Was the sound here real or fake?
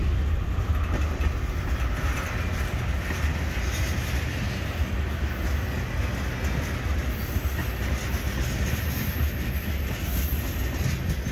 real